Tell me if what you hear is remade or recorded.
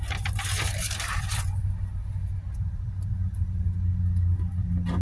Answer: recorded